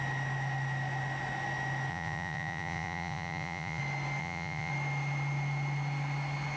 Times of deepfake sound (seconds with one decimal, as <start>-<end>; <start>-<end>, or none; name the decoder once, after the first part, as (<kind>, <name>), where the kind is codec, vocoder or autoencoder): 1.9-3.8 (vocoder, Vocos); 4.2-4.7